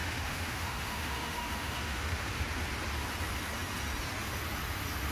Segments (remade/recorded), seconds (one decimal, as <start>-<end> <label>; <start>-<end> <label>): 0.0-2.3 remade; 2.3-5.1 recorded